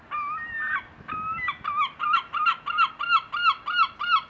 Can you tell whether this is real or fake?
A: real